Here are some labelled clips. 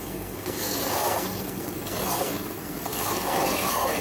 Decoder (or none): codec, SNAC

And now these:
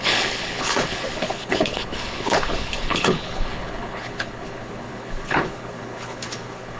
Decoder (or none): codec, HILCodec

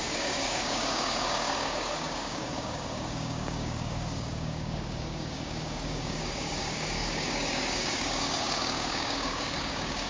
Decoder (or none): codec, DAC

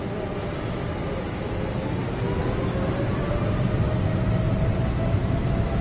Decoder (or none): none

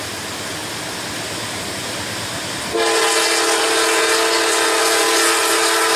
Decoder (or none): none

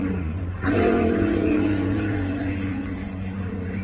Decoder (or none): vocoder, Vocos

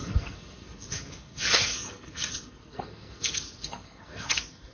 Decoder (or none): codec, SNAC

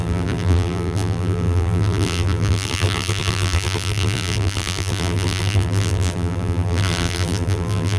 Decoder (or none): vocoder, BigVGAN v2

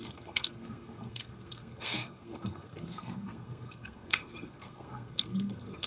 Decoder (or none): codec, SNAC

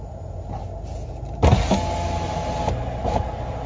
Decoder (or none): none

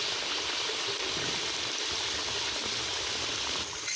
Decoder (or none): none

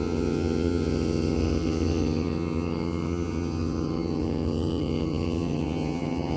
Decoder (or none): vocoder, HiFi-GAN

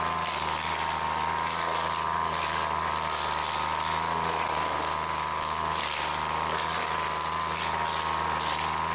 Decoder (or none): none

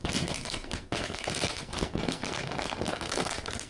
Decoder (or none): codec, SNAC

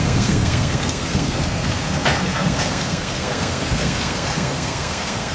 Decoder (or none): codec, SNAC